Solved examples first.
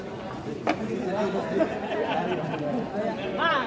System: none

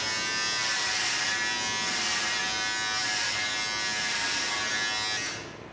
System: none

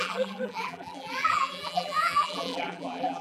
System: vocoder, BigVGAN v2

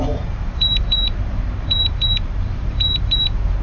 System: vocoder, BigVGAN v2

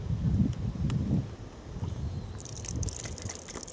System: none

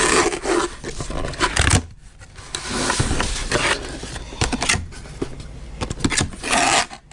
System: none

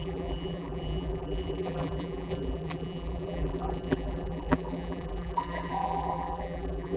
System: vocoder, BigVGAN v2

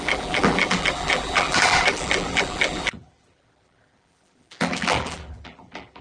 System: vocoder, BigVGAN v2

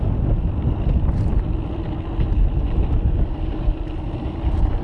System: none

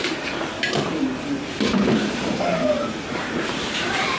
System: vocoder, BigVGAN v2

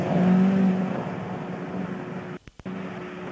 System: none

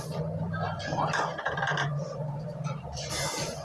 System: vocoder, BigVGAN v2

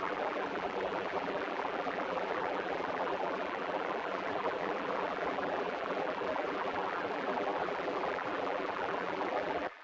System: vocoder, BigVGAN v2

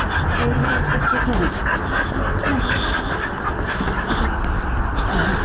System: none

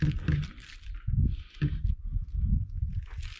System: none